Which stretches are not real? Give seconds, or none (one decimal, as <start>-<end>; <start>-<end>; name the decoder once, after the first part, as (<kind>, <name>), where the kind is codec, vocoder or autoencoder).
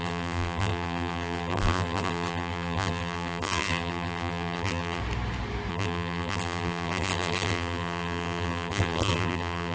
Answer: 0.0-5.0 (vocoder, BigVGAN v2); 5.7-9.7